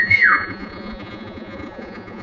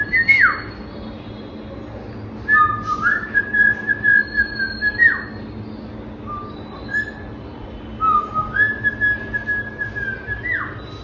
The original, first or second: second